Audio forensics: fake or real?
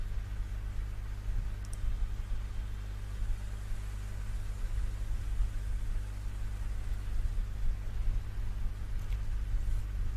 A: real